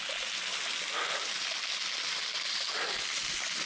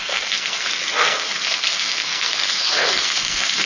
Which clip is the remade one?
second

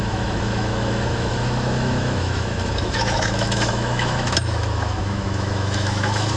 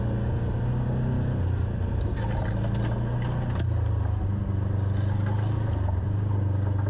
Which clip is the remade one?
first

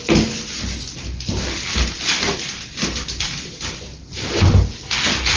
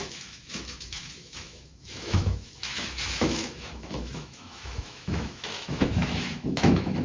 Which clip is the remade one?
second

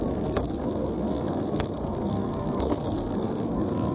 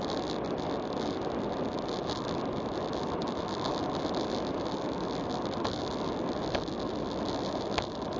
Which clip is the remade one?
first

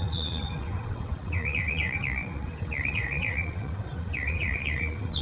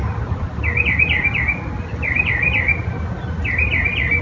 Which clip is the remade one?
first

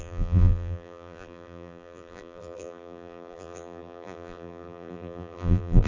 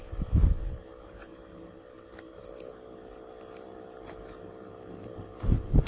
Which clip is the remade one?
first